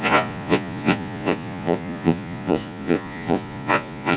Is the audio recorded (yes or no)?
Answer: no